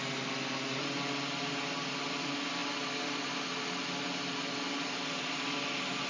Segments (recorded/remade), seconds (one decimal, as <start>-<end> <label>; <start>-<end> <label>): 0.0-6.1 recorded